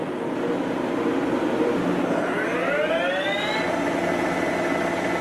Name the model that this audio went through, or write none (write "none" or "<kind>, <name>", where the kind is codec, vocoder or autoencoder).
none